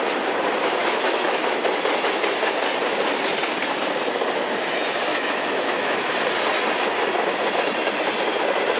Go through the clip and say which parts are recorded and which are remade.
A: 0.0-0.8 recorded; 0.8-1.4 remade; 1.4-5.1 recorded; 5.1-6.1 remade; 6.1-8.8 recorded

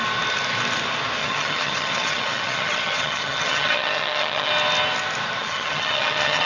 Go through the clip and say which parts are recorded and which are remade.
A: 0.0-1.2 recorded; 1.2-4.5 remade; 4.5-5.4 recorded; 5.4-6.5 remade

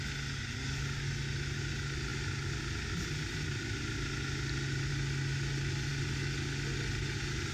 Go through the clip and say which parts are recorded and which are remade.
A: 0.0-7.5 recorded

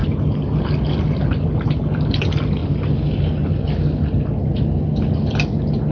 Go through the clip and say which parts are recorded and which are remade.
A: 0.0-5.9 recorded

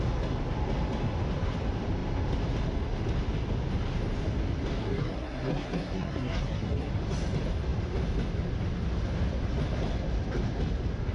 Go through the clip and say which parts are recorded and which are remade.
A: 0.0-4.8 recorded; 4.8-6.9 remade; 6.9-11.1 recorded